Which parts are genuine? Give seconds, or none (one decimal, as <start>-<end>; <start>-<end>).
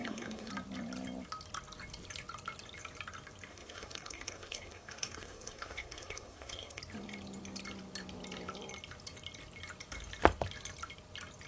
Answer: 0.5-3.5; 6.8-11.5